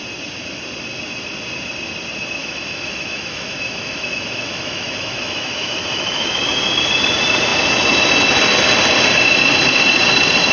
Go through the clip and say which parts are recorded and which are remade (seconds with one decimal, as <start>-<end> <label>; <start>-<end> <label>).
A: 0.0-2.4 recorded; 2.4-6.4 remade; 6.4-10.5 recorded